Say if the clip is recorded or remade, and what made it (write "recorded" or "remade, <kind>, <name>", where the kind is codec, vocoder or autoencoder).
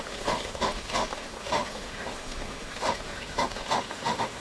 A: remade, autoencoder, DAC-VAE